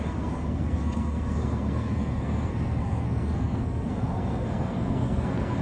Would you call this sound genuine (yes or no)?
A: no